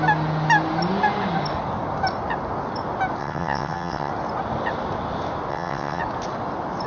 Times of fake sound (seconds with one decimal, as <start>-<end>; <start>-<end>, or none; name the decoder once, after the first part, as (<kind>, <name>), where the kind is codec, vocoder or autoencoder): 3.2-4.1 (vocoder, WaveNeXt); 5.5-6.0